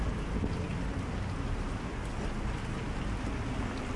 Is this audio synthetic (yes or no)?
no